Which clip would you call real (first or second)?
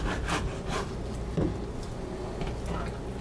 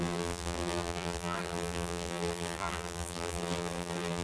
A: first